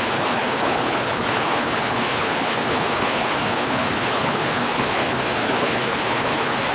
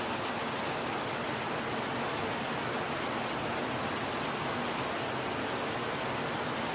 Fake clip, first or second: first